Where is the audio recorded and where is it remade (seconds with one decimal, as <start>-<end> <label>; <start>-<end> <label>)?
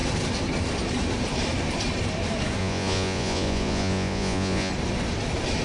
0.0-2.6 recorded; 2.6-4.7 remade; 4.7-5.6 recorded